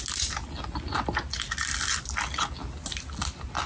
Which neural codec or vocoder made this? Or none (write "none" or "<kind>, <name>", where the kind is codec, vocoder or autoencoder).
none